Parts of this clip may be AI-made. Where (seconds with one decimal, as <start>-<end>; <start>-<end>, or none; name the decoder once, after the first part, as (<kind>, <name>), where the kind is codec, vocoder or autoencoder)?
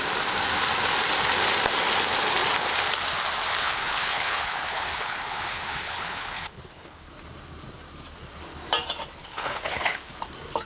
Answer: 3.6-7.1 (codec, HILCodec); 9.2-10.1